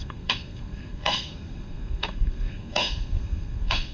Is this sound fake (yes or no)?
yes